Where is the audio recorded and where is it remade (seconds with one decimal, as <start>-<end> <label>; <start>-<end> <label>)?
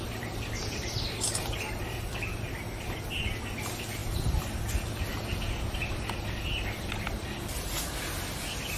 0.0-8.8 recorded